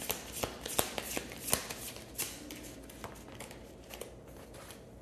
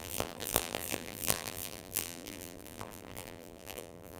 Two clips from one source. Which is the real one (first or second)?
first